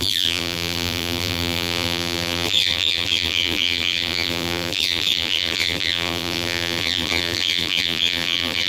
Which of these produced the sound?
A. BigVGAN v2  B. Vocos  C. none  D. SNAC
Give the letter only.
A